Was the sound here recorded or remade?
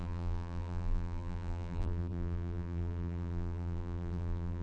remade